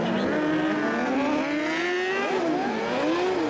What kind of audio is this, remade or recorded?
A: recorded